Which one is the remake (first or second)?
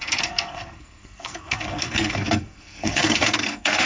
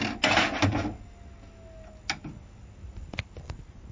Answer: first